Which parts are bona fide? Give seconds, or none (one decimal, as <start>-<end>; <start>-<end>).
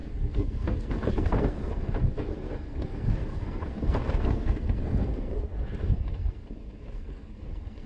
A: none